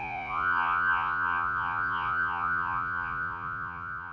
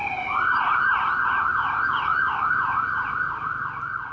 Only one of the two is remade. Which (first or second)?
first